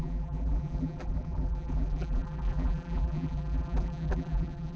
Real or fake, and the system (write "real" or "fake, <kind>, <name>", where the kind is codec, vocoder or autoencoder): fake, vocoder, BigVGAN v2